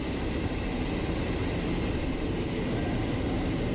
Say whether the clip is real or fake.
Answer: real